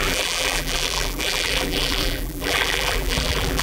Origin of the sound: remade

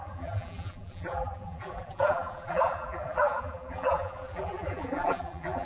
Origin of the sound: remade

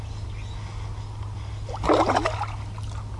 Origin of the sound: recorded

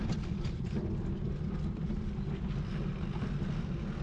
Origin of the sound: recorded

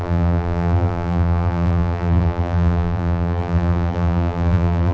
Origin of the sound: remade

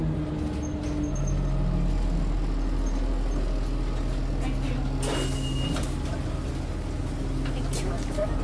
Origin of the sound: recorded